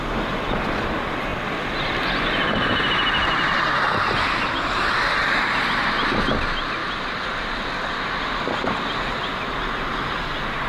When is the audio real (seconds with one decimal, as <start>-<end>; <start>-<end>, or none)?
0.0-10.7